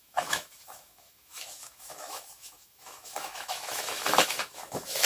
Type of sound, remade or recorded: remade